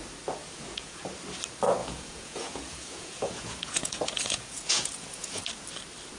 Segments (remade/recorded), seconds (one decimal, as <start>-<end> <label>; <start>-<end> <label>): 0.0-0.4 recorded; 0.4-1.0 remade; 1.0-1.8 recorded; 1.8-5.4 remade; 5.4-6.2 recorded